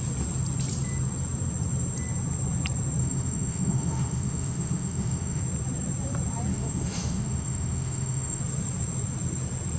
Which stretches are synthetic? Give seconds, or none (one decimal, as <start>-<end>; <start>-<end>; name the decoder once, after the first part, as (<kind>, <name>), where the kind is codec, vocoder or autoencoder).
3.0-5.4 (autoencoder, DAC-VAE); 6.5-8.4